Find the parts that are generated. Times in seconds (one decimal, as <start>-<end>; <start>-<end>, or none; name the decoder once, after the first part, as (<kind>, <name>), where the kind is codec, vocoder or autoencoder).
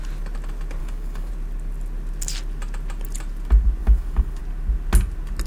0.8-1.3 (codec, DAC); 3.8-4.4